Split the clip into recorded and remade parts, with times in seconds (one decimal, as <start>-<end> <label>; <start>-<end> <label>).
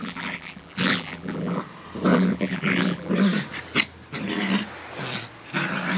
0.0-1.6 remade; 1.6-2.1 recorded; 2.1-3.1 remade; 3.1-6.0 recorded